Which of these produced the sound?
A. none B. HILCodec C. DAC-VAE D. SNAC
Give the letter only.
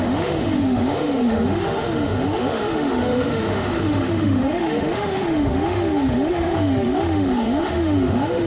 C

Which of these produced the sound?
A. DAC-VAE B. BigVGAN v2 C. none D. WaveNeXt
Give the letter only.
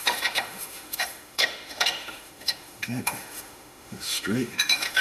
A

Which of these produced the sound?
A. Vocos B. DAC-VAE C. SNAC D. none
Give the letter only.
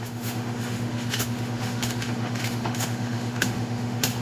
B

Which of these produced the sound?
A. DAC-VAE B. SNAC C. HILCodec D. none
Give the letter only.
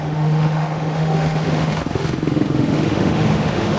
A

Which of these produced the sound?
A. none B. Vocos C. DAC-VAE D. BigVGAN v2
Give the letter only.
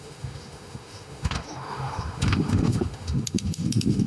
C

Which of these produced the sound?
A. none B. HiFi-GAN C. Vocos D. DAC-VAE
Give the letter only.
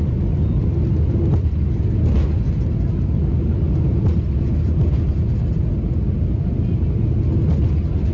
A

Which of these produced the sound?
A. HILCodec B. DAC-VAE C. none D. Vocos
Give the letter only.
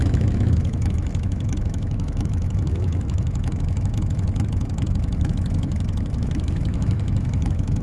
B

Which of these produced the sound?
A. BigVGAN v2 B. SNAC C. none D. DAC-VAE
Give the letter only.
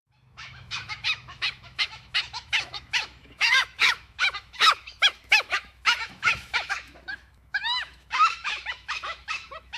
D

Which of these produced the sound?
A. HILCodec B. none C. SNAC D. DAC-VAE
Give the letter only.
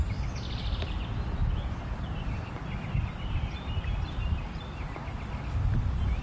B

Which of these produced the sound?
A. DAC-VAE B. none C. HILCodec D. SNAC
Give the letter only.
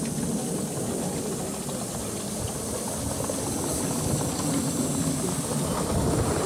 B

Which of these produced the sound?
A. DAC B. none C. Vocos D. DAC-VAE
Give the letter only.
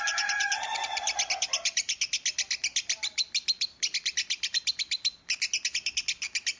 B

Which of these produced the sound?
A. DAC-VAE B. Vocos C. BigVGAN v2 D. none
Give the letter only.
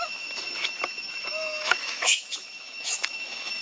A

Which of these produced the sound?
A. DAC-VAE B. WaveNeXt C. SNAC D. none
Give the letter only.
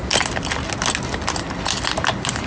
D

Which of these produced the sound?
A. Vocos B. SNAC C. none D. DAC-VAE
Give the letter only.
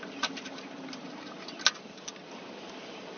C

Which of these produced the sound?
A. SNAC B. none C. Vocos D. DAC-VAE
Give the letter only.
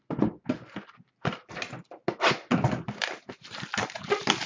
B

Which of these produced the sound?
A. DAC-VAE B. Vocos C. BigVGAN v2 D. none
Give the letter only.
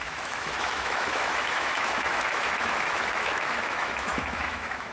A